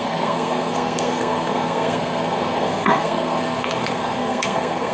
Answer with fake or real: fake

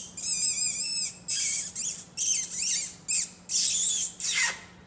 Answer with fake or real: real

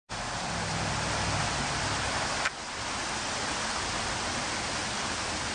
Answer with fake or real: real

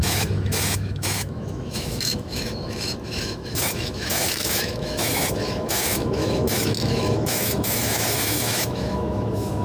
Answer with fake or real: fake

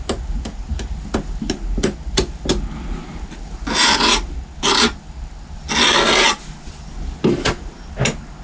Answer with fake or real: real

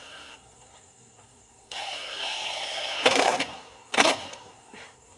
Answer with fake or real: fake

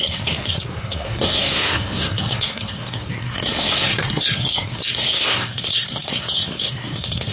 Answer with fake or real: fake